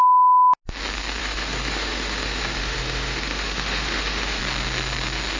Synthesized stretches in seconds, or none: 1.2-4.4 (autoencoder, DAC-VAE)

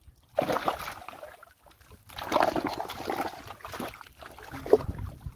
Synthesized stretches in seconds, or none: none

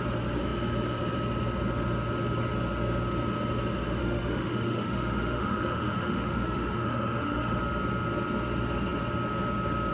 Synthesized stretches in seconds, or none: 4.0-7.6 (autoencoder, DAC-VAE)

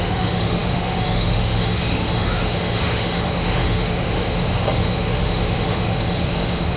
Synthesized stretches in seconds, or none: 0.0-6.8 (autoencoder, DAC-VAE)

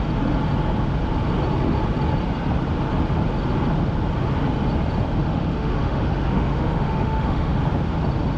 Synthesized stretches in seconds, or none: 5.2-7.6 (autoencoder, DAC-VAE)